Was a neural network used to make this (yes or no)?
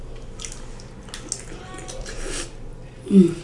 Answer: no